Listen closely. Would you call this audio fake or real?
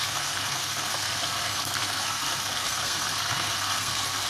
fake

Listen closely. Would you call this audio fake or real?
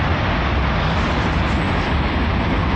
real